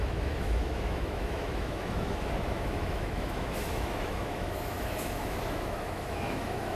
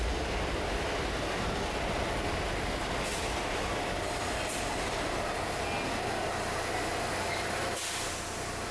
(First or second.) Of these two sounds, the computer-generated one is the first